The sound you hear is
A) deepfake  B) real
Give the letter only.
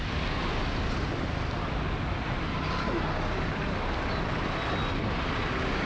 B